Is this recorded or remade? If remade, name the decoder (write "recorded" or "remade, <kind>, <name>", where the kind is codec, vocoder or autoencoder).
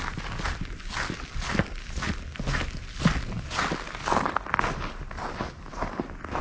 recorded